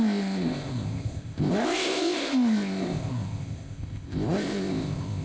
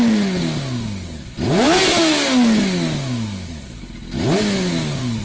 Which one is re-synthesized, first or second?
first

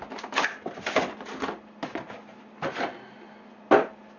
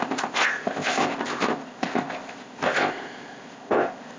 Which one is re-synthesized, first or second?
second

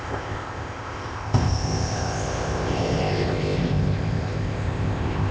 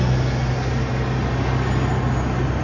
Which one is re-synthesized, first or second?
first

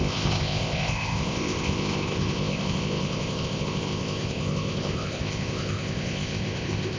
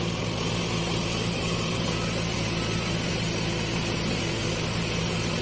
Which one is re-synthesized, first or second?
first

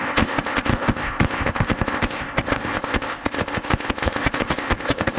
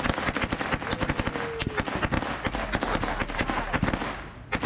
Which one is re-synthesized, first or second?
first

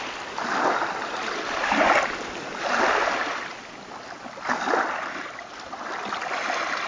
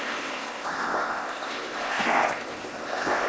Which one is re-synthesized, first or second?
second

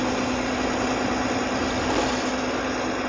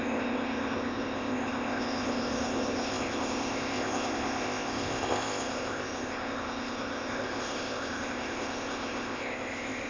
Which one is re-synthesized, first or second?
second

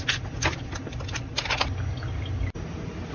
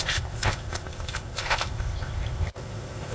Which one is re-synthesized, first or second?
second